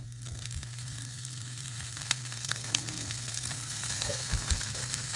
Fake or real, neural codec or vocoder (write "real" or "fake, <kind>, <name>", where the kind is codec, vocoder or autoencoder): fake, codec, SNAC